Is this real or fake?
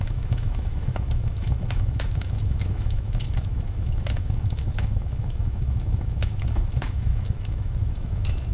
fake